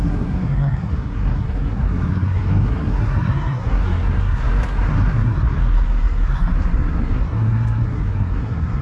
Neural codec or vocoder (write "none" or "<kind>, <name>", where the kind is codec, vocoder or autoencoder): codec, SNAC